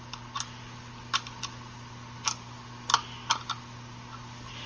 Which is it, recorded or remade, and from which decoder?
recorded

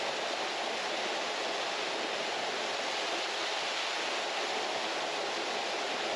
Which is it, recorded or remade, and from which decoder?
recorded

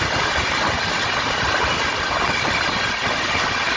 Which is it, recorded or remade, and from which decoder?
recorded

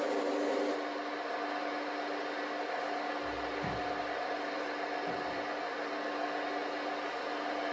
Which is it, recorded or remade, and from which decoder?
recorded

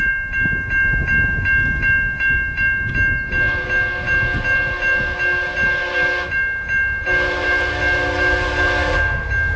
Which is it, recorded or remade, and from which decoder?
recorded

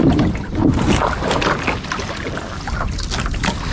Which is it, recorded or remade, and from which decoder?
recorded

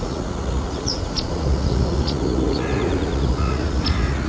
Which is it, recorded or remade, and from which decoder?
remade, vocoder, Vocos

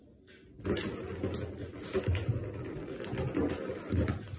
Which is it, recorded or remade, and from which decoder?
recorded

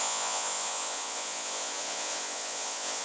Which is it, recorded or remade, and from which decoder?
remade, vocoder, Vocos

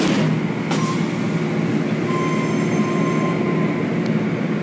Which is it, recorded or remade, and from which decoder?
recorded